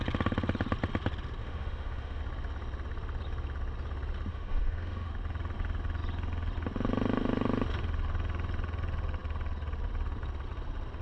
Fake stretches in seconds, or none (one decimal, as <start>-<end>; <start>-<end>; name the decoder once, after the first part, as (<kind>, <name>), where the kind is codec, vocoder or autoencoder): 1.4-2.2 (autoencoder, DAC-VAE); 4.3-5.1